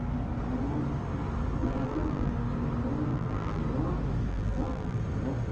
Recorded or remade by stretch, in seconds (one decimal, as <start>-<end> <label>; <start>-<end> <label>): 0.0-1.6 recorded; 1.6-2.3 remade; 2.3-3.1 recorded; 3.1-3.6 remade; 3.6-4.3 recorded; 4.3-5.0 remade; 5.0-5.5 recorded